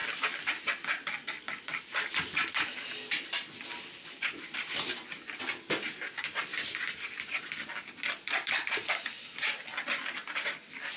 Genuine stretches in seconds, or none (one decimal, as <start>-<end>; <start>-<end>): 0.0-3.1; 9.7-10.3